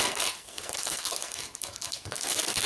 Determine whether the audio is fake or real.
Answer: fake